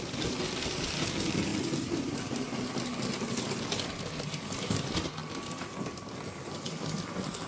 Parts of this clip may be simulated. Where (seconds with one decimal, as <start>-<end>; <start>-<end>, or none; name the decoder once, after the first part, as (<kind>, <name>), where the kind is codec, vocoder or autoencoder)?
0.0-2.9 (vocoder, BigVGAN v2); 3.9-7.5